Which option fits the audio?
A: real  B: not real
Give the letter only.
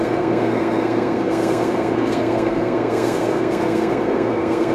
B